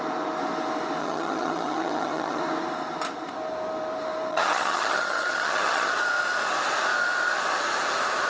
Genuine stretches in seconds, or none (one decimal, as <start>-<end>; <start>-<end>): 0.0-1.0; 2.4-4.3; 5.9-8.3